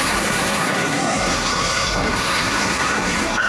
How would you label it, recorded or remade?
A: remade